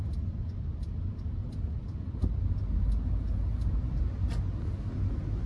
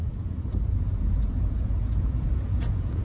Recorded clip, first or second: first